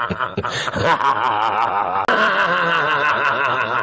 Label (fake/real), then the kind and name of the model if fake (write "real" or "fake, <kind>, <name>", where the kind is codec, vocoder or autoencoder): real